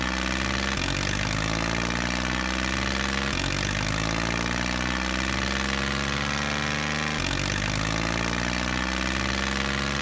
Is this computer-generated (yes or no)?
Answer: no